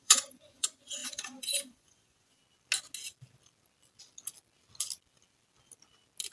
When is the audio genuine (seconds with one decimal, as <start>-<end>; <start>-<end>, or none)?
2.4-6.3